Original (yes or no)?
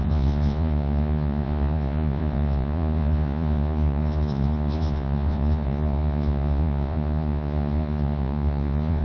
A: no